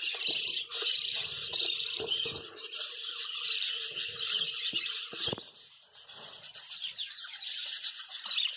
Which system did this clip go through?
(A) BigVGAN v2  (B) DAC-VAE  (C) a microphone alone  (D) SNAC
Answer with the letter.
A